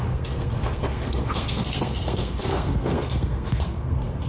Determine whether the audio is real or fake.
fake